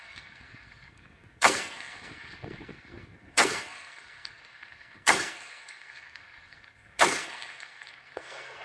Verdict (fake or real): fake